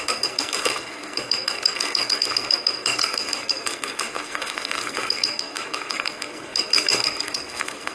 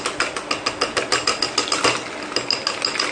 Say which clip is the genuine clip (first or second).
second